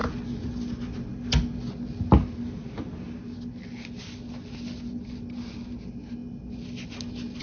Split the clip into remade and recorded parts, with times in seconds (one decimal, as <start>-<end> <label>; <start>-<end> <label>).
0.0-7.4 recorded